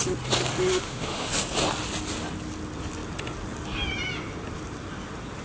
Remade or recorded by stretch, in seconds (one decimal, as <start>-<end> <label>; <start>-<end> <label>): 0.0-0.7 recorded; 0.7-1.3 remade; 1.3-5.4 recorded